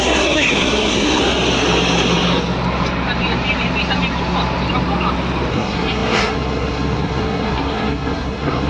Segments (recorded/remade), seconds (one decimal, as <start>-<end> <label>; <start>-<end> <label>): 0.0-1.2 remade; 1.2-5.5 recorded; 5.5-8.7 remade